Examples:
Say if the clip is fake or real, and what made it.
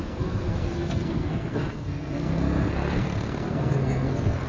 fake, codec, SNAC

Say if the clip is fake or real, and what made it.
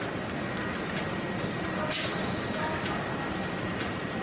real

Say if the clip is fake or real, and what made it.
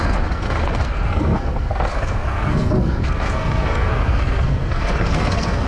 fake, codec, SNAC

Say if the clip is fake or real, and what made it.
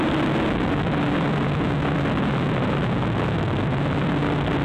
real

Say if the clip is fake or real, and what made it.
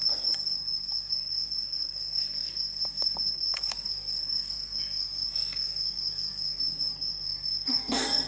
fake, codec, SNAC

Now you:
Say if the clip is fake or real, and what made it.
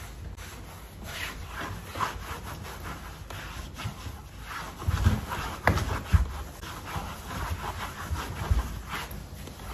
real